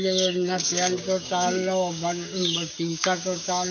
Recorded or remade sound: remade